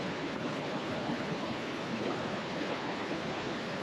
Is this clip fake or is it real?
fake